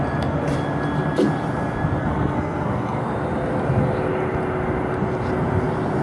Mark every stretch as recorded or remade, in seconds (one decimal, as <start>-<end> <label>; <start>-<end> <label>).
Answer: 0.0-2.0 recorded; 2.0-3.0 remade; 3.0-6.0 recorded